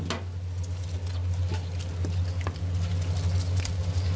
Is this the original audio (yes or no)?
yes